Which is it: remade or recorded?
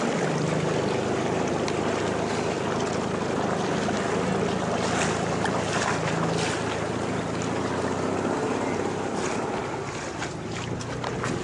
recorded